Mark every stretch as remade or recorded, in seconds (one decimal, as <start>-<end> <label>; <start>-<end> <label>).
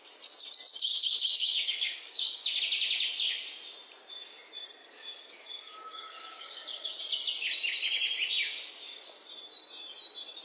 0.0-0.9 recorded; 0.9-2.6 remade; 2.6-4.8 recorded; 4.8-7.0 remade; 7.0-10.4 recorded